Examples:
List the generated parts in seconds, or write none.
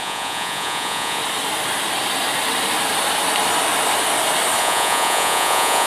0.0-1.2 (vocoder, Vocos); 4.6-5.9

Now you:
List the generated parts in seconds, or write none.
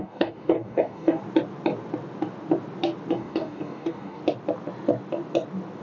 0.0-1.2 (codec, DAC); 3.1-4.2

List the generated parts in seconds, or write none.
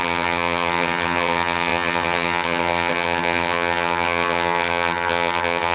0.0-5.7 (vocoder, HiFi-GAN)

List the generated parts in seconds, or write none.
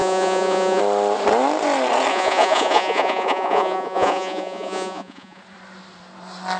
0.0-0.8 (vocoder, Vocos); 2.1-5.4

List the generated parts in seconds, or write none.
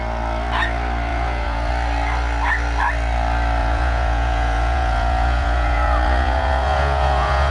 1.1-1.7 (vocoder, Vocos); 3.6-7.5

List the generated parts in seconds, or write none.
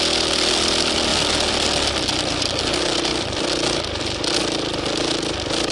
none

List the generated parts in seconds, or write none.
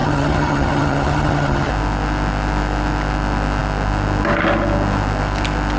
0.0-1.7 (vocoder, HiFi-GAN)